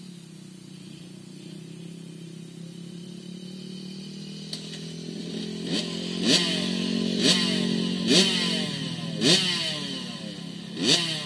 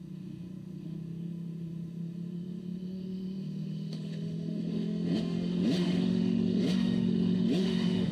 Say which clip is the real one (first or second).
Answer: first